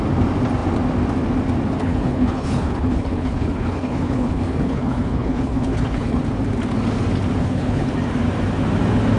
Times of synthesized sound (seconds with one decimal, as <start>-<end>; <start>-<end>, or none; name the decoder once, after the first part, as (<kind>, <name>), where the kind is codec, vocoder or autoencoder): 1.8-6.2 (codec, HILCodec); 7.4-7.9